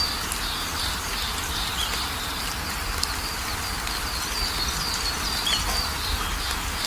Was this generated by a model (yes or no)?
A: no